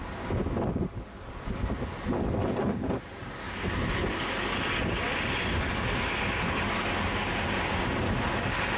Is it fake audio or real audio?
real